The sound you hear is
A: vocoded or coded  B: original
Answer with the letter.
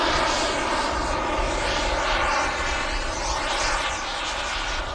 B